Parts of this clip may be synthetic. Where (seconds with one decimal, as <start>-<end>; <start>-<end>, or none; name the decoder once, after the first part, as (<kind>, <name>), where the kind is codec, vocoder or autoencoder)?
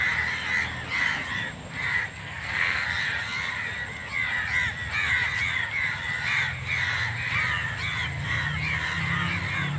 2.2-3.0 (codec, SNAC)